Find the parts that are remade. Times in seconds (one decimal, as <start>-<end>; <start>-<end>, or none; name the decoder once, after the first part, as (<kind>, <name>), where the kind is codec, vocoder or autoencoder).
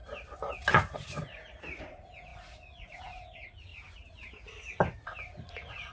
0.7-3.7 (vocoder, Vocos); 4.9-5.9